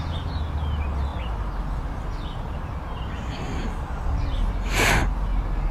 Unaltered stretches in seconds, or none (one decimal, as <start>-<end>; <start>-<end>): 0.0-5.7